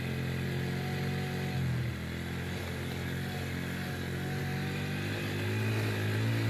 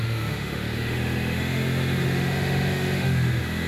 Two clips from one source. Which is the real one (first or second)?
first